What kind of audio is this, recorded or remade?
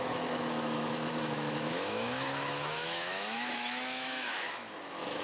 remade